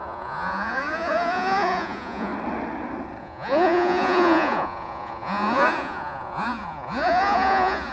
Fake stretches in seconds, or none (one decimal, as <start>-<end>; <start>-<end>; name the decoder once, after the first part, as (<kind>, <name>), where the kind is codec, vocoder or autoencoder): 0.0-2.3 (vocoder, Vocos); 3.2-7.9